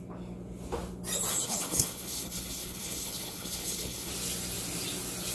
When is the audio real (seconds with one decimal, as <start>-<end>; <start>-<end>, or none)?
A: 0.0-1.3; 4.1-5.3